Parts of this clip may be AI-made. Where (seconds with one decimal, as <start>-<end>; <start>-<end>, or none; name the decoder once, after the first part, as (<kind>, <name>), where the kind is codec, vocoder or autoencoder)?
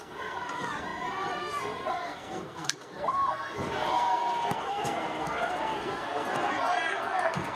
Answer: 0.0-7.6 (codec, SNAC)